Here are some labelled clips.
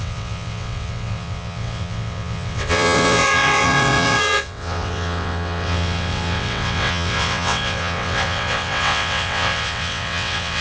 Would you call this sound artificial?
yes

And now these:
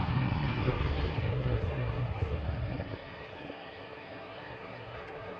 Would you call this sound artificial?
yes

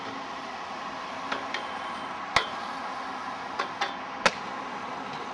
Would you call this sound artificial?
no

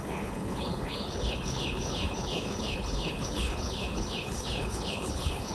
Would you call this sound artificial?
yes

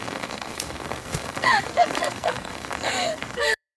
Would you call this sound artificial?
yes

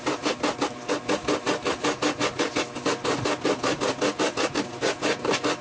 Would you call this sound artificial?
no